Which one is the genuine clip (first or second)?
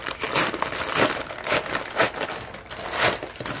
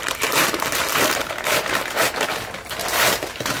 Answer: first